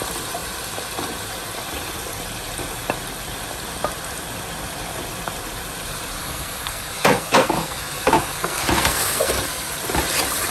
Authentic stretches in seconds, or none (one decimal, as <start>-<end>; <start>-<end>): 0.0-6.2; 9.7-10.5